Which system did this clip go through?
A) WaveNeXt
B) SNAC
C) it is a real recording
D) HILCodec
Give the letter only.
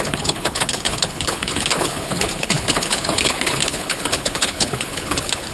D